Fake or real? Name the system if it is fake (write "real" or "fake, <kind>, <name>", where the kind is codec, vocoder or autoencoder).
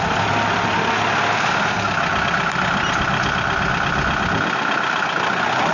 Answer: real